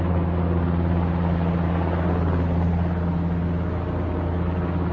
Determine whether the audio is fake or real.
real